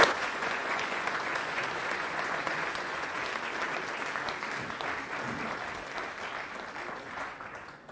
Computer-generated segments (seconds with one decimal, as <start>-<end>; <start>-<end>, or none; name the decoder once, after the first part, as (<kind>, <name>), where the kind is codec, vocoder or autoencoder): 0.0-3.2 (vocoder, Vocos); 6.9-7.9